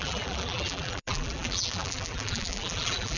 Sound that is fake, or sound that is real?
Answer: fake